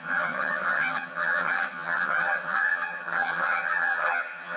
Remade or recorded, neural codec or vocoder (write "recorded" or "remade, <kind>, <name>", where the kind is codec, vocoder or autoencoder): remade, vocoder, HiFi-GAN